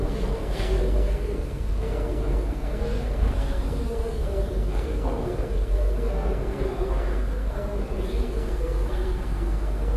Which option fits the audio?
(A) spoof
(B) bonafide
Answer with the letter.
A